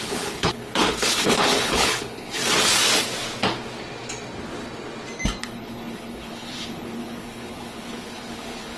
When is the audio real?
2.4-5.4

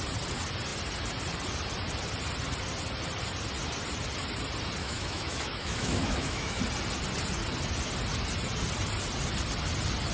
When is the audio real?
0.0-4.8; 6.6-10.1

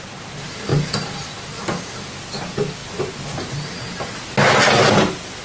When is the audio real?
0.0-5.4

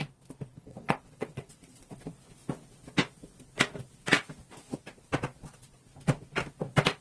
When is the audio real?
0.0-0.5; 2.0-7.0